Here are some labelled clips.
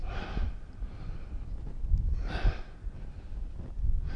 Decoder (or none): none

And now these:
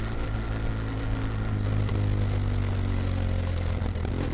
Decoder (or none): none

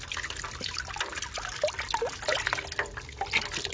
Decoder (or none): none